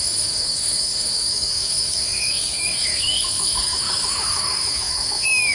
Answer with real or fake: fake